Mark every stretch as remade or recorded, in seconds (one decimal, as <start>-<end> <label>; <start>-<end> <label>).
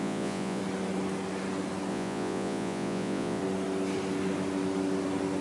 0.0-0.6 remade; 0.6-1.9 recorded; 1.9-3.4 remade; 3.4-5.4 recorded